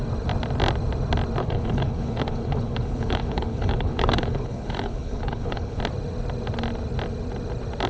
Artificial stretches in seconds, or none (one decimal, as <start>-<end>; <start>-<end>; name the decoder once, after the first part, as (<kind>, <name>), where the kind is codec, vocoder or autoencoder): 1.4-5.8 (codec, HILCodec)